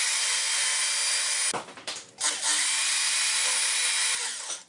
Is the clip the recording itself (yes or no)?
yes